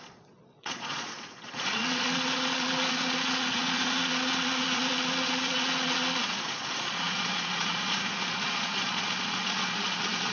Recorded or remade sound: remade